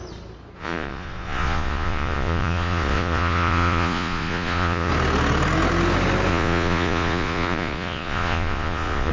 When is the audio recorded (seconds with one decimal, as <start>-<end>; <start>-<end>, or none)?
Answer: 0.0-0.6; 4.9-6.3